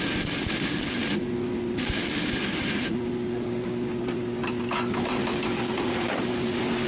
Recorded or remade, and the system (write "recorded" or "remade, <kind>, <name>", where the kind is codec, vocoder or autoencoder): recorded